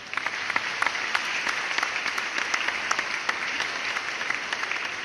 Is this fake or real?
real